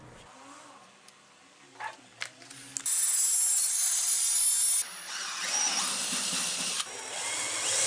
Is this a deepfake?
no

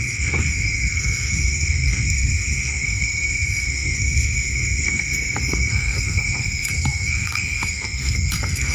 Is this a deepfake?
yes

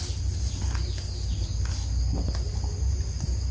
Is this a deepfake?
no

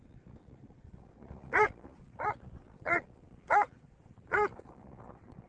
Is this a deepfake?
yes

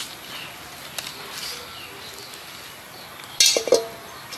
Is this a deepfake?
no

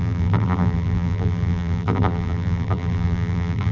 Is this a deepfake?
yes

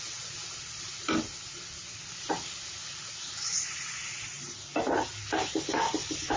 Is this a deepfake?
no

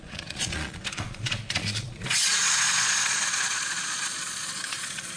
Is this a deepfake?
yes